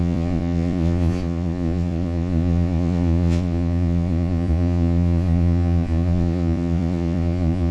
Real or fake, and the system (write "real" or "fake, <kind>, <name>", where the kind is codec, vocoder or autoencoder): fake, vocoder, Vocos